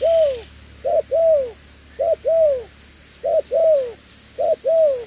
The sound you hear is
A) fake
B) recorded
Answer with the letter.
B